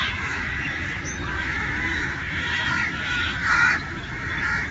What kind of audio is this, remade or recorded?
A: remade